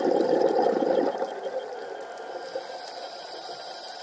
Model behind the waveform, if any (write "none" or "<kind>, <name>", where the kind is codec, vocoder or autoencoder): none